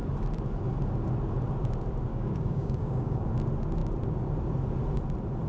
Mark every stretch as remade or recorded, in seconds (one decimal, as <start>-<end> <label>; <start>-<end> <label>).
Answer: 0.0-2.1 recorded; 2.1-3.3 remade; 3.3-5.5 recorded